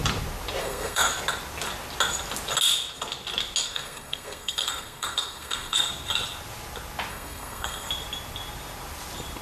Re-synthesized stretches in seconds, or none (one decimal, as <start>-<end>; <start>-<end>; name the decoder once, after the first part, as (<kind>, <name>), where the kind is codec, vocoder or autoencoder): 0.6-1.1 (codec, SNAC); 3.6-5.9; 7.1-7.9